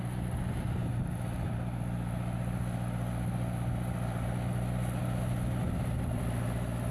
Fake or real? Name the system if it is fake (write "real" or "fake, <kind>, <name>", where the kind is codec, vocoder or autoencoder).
real